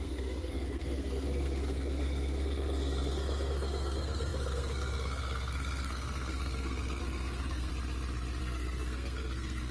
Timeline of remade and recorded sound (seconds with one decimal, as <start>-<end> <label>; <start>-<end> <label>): 0.0-7.7 remade; 7.7-8.4 recorded; 8.4-9.7 remade